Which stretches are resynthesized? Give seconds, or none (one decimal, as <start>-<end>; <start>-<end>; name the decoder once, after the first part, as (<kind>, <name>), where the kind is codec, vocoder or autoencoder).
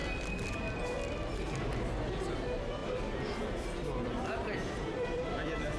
0.0-0.6 (vocoder, BigVGAN v2); 2.8-5.8